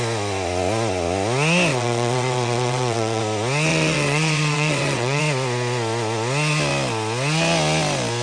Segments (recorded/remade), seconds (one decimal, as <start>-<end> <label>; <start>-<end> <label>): 0.0-1.7 recorded; 1.7-3.2 remade; 3.2-3.7 recorded; 3.7-5.2 remade; 5.2-8.2 recorded